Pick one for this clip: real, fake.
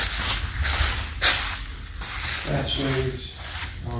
real